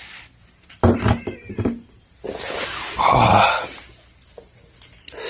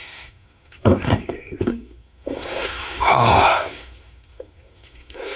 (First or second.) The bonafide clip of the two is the first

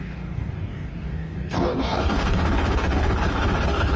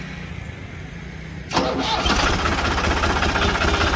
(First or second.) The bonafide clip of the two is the second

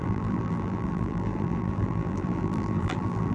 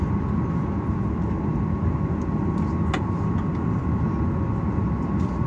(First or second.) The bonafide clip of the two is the second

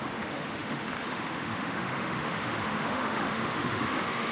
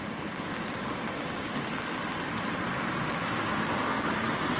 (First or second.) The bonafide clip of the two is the second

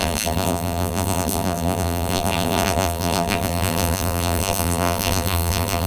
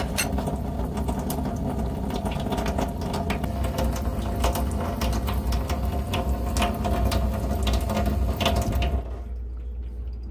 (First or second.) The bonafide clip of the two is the second